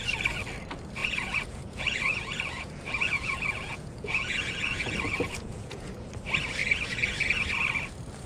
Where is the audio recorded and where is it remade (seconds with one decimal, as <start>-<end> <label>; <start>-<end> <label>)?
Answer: 0.0-1.0 recorded; 1.0-5.9 remade; 5.9-8.3 recorded